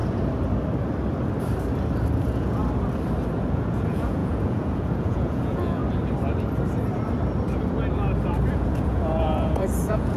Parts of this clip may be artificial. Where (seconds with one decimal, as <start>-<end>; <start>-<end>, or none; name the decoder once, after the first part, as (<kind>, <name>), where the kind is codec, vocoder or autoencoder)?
2.2-2.6 (vocoder, Vocos); 3.4-5.8; 8.5-10.2